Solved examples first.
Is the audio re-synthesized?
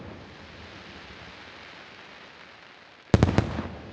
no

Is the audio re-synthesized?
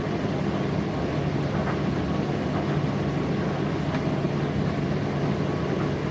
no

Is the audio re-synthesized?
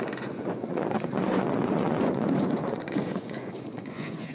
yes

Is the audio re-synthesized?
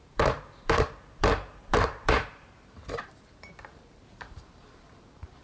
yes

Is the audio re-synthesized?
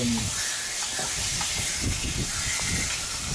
no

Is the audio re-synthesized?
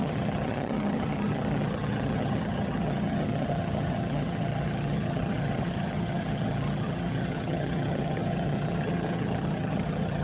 yes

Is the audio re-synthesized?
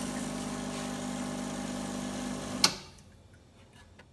no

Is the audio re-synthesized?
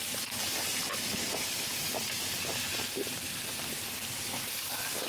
no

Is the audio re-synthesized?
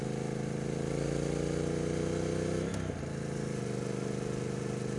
no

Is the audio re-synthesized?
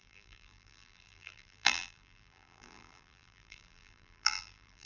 yes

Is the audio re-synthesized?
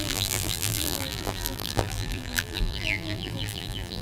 yes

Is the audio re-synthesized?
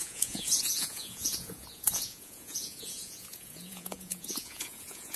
yes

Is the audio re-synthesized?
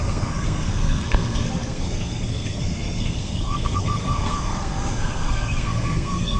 yes